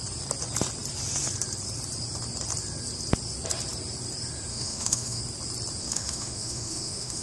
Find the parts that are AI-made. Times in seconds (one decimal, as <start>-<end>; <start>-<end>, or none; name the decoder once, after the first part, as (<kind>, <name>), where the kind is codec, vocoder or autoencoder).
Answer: 4.5-5.2 (autoencoder, DAC-VAE); 5.8-7.2

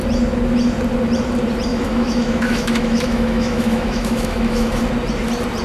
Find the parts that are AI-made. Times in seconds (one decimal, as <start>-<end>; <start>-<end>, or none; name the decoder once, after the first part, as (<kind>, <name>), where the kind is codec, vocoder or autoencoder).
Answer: 1.7-4.8 (autoencoder, DAC-VAE)

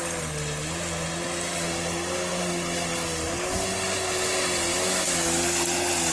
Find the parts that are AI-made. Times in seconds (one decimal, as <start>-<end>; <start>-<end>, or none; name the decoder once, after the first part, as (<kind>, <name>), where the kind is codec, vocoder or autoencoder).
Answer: 4.7-5.4 (autoencoder, DAC-VAE)